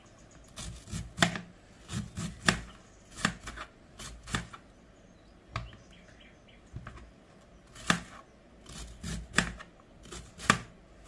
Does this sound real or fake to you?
real